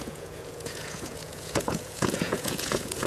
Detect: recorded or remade remade